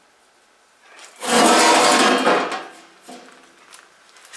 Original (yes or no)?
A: yes